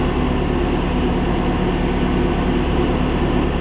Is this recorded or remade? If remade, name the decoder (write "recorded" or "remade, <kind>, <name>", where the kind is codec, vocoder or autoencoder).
recorded